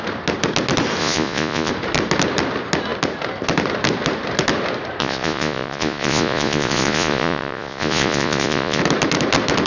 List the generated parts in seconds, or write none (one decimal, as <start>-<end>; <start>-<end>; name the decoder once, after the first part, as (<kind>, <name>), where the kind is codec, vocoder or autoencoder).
1.0-1.7 (vocoder, Vocos); 5.0-8.8